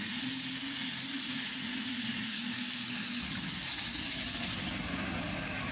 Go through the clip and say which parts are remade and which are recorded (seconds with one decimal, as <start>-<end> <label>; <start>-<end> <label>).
0.0-1.1 recorded; 1.1-2.4 remade; 2.4-5.7 recorded